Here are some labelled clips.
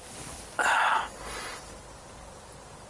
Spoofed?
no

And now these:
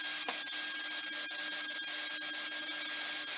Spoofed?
no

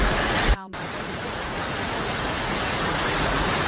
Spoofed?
yes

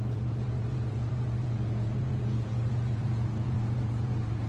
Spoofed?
yes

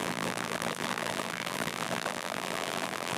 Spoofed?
yes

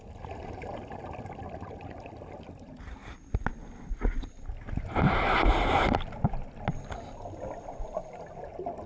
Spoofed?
no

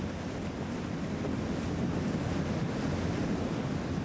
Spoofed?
no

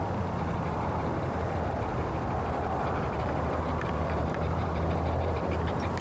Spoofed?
yes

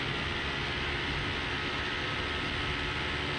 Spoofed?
no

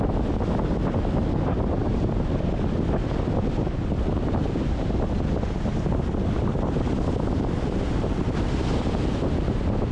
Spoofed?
no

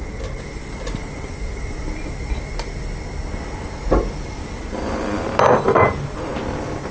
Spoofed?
no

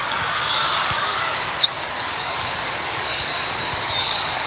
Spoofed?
yes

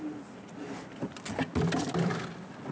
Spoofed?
no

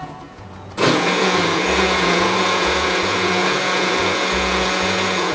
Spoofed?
yes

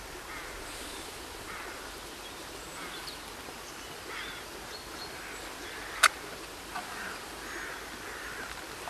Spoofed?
no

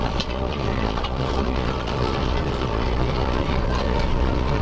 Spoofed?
yes